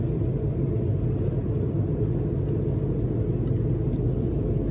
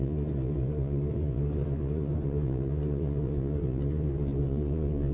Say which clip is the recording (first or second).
first